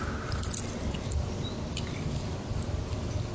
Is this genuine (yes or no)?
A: yes